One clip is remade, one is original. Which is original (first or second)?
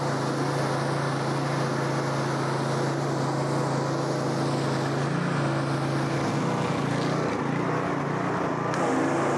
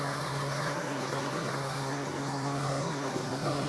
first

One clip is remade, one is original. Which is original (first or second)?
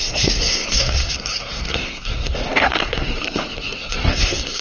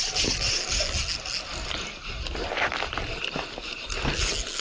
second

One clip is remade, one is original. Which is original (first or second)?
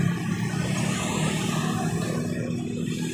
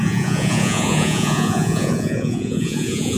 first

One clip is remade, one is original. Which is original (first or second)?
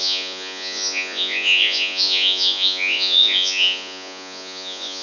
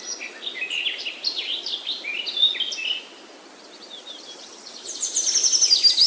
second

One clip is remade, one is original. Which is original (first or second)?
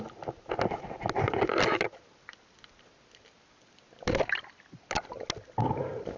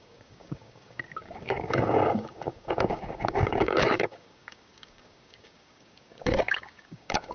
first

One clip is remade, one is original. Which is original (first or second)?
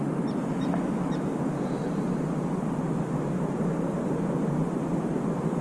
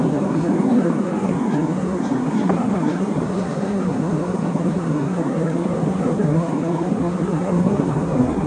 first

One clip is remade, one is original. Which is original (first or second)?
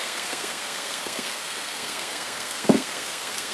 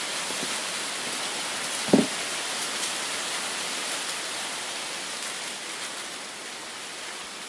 second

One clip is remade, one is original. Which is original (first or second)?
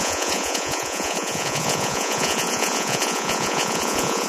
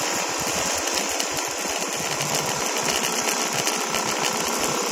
second